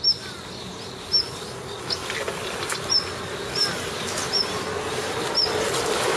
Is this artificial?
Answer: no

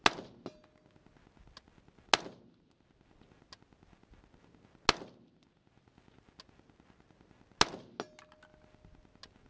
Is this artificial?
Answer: no